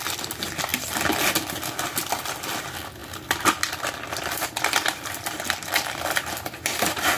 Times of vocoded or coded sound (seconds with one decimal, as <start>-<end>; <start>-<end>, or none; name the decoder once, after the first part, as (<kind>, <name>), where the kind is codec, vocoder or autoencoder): 3.0-7.2 (vocoder, BigVGAN v2)